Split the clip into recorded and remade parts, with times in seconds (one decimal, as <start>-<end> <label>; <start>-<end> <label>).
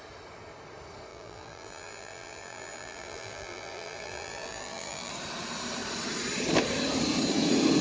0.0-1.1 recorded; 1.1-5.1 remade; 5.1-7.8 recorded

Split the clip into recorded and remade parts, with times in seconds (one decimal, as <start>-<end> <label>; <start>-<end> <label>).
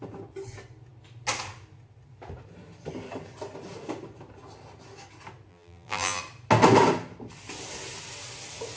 0.0-5.5 recorded; 5.5-6.2 remade; 6.2-8.8 recorded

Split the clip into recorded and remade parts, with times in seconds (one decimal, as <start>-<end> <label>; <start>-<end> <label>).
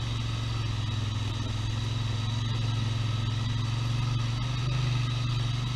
0.0-5.8 recorded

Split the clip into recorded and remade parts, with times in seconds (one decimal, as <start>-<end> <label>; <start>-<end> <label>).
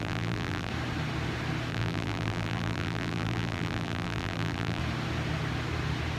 0.0-0.7 remade; 0.7-1.7 recorded; 1.7-4.8 remade; 4.8-6.2 recorded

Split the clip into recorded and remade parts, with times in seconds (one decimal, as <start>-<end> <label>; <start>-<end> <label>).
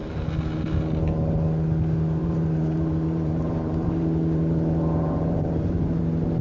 0.0-2.2 recorded; 2.2-6.0 remade; 6.0-6.4 recorded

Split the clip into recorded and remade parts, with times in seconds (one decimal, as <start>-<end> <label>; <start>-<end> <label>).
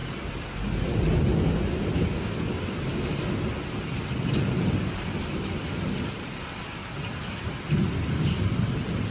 0.0-9.1 recorded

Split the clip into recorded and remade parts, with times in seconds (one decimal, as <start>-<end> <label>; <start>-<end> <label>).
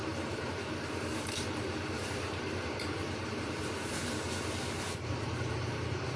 0.0-6.2 remade